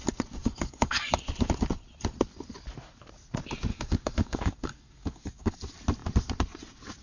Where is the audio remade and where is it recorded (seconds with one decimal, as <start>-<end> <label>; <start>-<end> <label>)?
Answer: 0.0-0.4 recorded; 0.4-1.2 remade; 1.2-3.7 recorded; 3.7-5.6 remade; 5.6-7.0 recorded